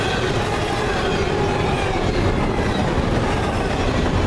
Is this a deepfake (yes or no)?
no